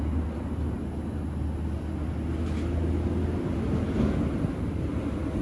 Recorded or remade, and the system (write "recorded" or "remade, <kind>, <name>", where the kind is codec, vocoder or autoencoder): recorded